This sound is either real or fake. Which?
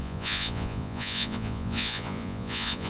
fake